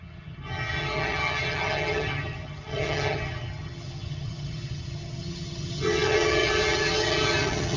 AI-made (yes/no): yes